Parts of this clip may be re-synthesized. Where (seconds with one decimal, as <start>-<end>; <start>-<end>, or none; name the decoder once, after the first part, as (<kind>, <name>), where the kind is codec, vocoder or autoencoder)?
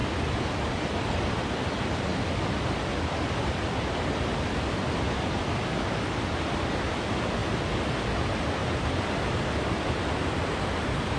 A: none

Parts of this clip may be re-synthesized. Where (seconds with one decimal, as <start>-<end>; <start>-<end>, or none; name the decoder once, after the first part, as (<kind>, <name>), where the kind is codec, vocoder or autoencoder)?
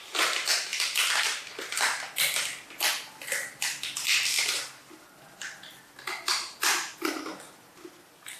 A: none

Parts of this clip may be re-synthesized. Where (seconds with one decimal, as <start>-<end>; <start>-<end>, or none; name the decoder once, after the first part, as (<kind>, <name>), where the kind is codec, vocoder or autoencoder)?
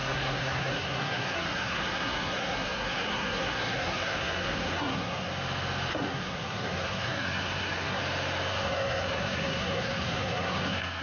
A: 0.0-5.3 (codec, SNAC); 5.9-8.0; 8.5-11.0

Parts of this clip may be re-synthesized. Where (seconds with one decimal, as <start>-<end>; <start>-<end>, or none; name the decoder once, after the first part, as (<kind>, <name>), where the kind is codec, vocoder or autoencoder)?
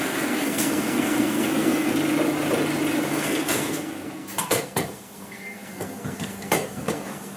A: 0.0-1.9 (codec, SNAC); 3.1-7.4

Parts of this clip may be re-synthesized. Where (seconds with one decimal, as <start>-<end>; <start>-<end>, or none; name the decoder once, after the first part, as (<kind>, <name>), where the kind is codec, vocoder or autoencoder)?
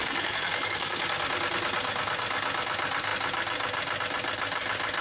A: 0.0-1.0 (codec, SNAC)